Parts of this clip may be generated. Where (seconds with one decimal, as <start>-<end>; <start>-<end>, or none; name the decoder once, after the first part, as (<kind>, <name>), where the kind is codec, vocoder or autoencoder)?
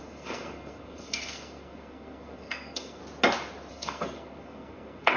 0.0-3.0 (codec, SNAC); 3.7-5.2